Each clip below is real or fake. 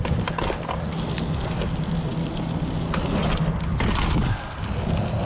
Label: real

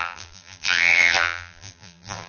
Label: fake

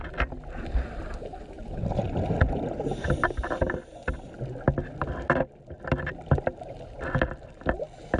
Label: real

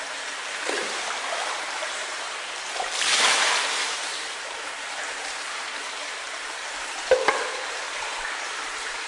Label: fake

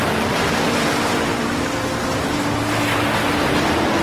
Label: real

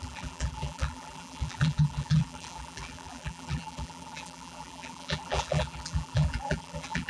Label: fake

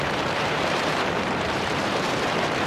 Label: fake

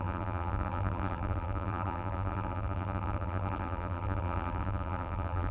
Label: fake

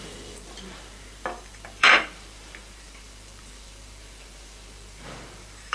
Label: fake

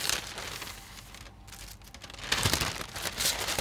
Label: real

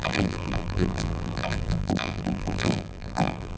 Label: fake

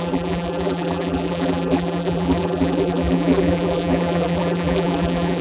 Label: fake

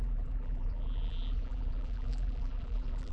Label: fake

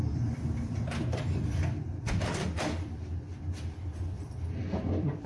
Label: fake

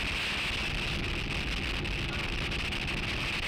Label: real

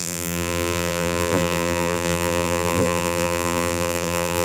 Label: fake